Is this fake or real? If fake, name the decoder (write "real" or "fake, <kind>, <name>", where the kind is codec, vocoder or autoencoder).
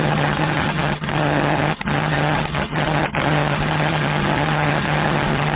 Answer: fake, vocoder, HiFi-GAN